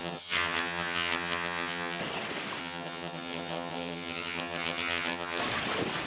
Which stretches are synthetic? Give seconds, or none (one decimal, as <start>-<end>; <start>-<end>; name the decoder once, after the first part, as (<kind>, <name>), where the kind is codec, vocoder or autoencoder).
0.0-2.0 (vocoder, HiFi-GAN); 2.6-5.4